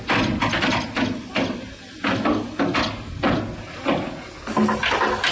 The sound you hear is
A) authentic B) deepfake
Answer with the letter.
A